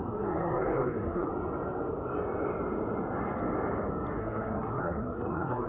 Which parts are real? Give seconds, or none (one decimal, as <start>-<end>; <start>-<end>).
1.3-4.2